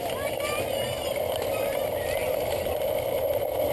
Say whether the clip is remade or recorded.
recorded